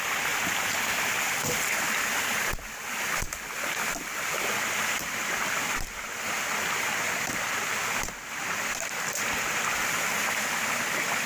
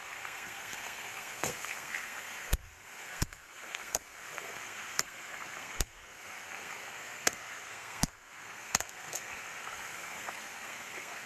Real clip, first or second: first